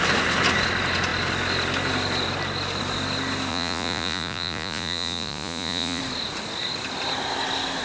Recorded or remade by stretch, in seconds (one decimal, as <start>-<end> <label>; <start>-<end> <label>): 0.0-3.5 recorded; 3.5-6.0 remade; 6.0-7.8 recorded